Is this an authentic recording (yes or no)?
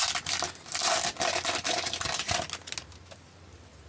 yes